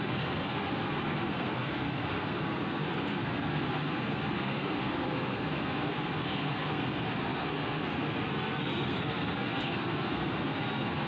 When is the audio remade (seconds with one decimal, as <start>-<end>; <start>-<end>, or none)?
0.0-11.1